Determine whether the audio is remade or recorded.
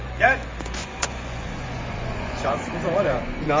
remade